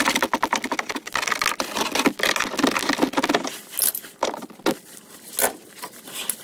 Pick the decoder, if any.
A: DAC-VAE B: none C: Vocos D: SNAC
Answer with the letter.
B